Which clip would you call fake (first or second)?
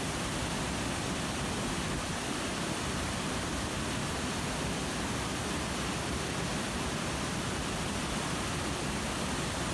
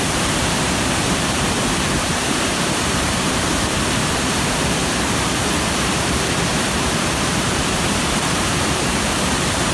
second